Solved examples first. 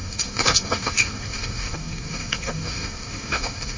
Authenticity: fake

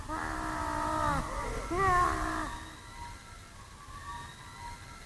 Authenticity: real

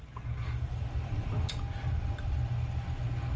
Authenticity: real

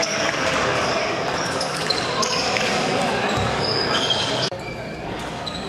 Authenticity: fake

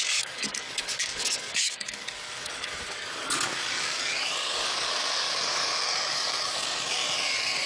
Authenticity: fake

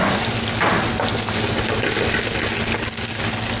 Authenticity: real